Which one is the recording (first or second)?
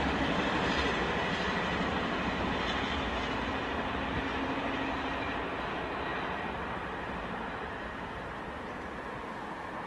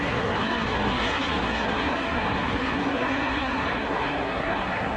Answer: first